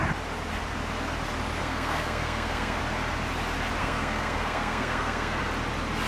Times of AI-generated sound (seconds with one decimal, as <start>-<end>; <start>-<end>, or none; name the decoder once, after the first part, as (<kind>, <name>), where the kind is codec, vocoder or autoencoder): 1.6-2.8 (codec, SNAC); 3.8-5.4